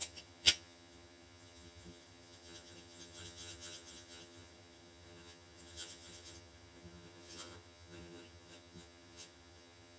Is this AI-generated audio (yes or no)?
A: yes